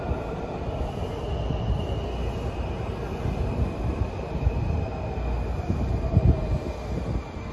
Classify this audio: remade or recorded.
recorded